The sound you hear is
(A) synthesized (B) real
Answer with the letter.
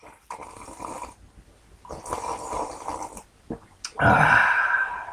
B